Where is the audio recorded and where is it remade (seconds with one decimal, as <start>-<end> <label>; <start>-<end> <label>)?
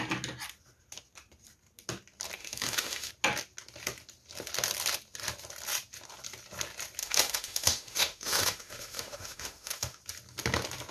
0.0-2.4 recorded; 2.4-3.1 remade; 3.1-7.0 recorded; 7.0-10.0 remade; 10.0-10.9 recorded